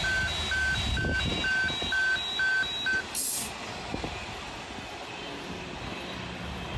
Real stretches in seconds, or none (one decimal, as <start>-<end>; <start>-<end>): 0.0-6.8